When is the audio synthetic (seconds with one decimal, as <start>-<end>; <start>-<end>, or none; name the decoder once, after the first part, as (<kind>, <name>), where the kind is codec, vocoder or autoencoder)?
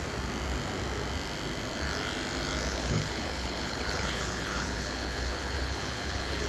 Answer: 2.7-6.5 (codec, HILCodec)